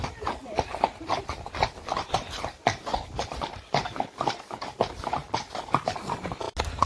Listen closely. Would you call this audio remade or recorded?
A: recorded